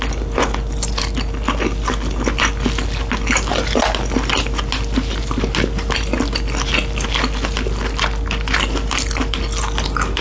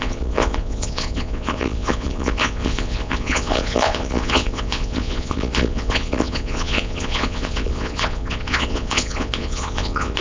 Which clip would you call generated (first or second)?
second